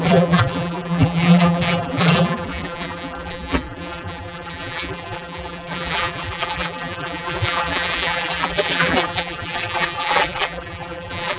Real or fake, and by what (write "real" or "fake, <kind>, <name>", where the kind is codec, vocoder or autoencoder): fake, vocoder, BigVGAN v2